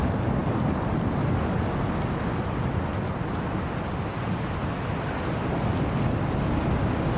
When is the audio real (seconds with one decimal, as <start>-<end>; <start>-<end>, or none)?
0.0-7.2